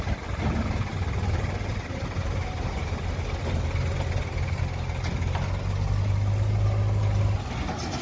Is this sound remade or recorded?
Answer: recorded